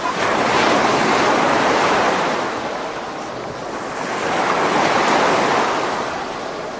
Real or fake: real